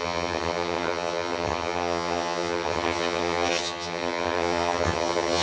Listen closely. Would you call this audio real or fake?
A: fake